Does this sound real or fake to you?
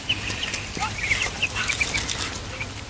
real